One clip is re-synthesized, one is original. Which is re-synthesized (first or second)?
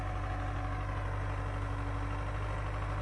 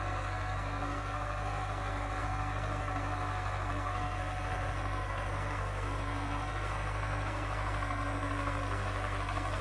second